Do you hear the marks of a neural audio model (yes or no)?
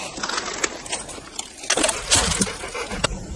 no